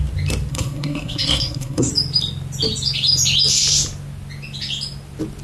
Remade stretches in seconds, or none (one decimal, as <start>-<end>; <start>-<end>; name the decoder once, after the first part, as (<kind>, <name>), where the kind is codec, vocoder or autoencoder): 0.5-1.9 (codec, SNAC)